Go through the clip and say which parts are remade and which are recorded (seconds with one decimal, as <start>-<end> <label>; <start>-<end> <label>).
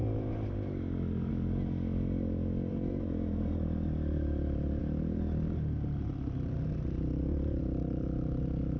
0.0-2.7 recorded; 2.7-3.5 remade; 3.5-8.8 recorded